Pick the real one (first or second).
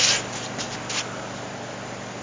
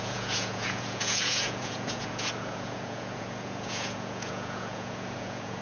first